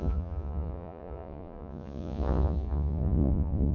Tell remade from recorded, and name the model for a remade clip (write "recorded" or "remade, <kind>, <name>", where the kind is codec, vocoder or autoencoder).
remade, vocoder, Vocos